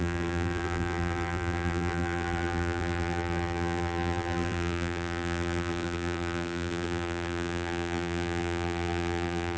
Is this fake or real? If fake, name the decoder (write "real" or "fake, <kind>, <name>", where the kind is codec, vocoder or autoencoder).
fake, vocoder, BigVGAN v2